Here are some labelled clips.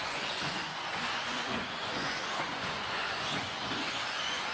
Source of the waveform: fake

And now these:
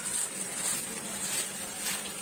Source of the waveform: real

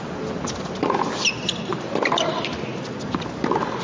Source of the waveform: real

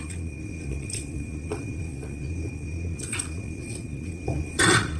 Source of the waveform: fake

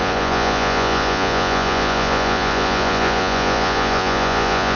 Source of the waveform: fake